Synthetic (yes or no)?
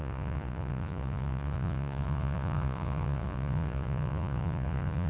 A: yes